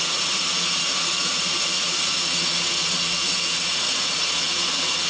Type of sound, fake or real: fake